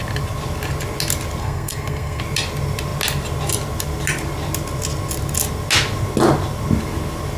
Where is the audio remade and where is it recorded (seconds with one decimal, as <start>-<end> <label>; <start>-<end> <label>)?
0.0-1.4 recorded; 1.4-2.2 remade; 2.2-7.4 recorded